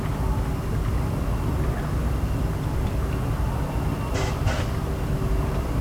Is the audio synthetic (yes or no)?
no